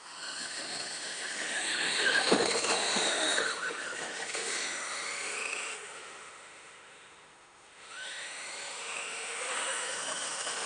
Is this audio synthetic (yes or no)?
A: yes